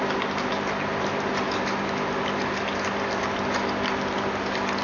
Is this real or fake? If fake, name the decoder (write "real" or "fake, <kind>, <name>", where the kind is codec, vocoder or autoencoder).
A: real